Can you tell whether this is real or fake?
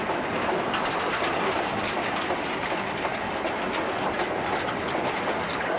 real